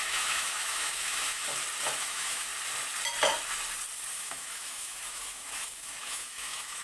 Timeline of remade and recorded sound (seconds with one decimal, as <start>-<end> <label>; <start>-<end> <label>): 0.0-1.4 remade; 1.4-2.0 recorded; 2.0-2.5 remade; 2.5-4.1 recorded; 4.1-6.8 remade